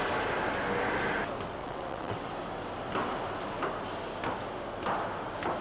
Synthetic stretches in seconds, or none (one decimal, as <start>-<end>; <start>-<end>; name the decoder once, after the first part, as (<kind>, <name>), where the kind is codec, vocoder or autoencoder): 1.6-2.3 (vocoder, WaveNeXt)